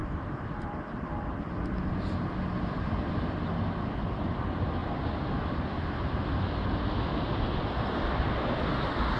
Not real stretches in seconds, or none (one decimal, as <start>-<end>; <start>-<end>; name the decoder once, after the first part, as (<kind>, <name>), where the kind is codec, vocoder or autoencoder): 0.0-2.3 (vocoder, BigVGAN v2); 4.8-5.6

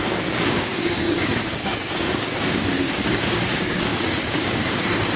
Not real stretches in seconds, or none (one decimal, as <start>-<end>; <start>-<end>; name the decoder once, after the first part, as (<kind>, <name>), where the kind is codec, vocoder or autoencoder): 0.0-5.2 (codec, DAC)

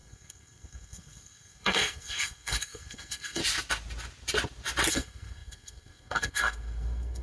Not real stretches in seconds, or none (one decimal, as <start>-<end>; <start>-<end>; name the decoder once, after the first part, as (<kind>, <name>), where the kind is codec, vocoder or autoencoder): 0.0-3.4 (codec, SNAC); 4.9-7.2

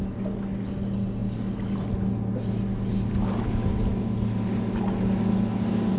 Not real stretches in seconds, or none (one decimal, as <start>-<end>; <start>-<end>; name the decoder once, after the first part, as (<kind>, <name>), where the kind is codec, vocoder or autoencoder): none